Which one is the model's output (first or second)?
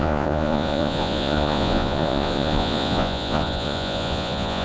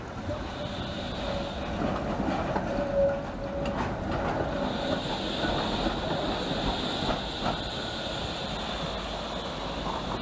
first